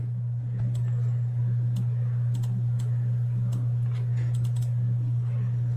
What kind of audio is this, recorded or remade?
recorded